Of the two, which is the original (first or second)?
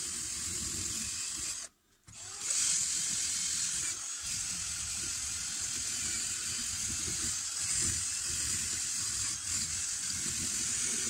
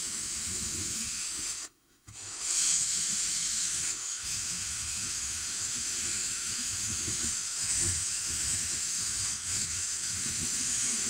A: first